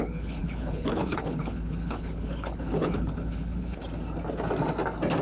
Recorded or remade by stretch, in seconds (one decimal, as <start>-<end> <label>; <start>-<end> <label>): 0.0-3.8 remade; 3.8-5.2 recorded